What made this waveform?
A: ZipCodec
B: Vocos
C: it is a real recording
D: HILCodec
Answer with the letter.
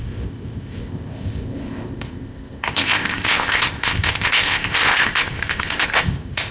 A